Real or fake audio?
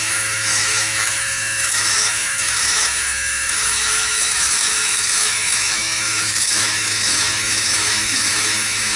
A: fake